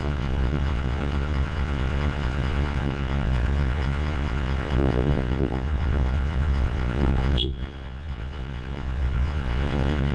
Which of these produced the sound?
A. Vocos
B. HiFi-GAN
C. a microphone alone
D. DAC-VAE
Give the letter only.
A